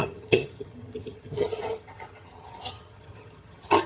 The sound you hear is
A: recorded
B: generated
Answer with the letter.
B